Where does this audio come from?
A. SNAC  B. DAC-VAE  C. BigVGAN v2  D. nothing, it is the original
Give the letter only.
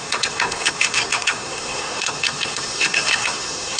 A